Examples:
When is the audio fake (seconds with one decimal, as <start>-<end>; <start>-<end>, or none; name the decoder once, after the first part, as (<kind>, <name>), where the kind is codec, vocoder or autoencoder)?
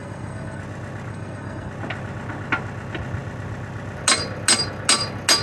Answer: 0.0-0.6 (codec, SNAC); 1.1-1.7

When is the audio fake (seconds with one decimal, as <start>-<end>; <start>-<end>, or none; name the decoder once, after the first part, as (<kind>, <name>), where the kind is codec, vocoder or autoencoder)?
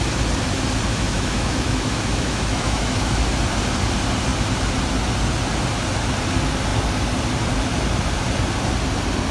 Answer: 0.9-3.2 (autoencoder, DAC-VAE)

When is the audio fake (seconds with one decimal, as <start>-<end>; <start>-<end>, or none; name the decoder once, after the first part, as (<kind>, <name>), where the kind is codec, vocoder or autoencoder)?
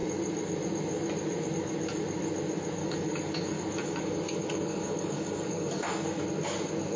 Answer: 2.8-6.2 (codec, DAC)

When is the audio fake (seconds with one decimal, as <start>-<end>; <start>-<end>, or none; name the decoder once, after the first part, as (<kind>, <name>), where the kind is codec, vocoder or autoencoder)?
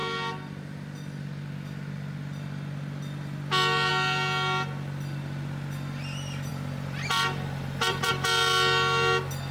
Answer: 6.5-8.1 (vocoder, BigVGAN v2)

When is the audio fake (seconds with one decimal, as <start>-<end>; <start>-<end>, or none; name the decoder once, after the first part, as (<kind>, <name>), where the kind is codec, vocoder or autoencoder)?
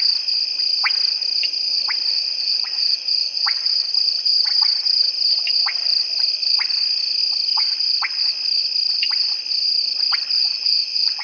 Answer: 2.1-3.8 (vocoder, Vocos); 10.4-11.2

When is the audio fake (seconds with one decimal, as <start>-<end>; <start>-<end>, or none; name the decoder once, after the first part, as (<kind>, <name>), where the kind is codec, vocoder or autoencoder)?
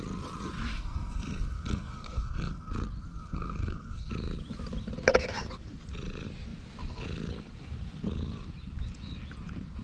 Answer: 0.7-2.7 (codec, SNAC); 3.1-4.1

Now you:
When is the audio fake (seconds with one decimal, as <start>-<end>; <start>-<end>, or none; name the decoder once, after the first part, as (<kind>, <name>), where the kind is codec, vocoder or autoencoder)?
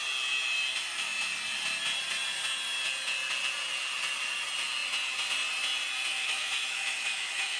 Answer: 6.1-7.6 (autoencoder, DAC-VAE)